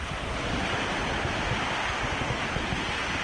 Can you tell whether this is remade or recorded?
recorded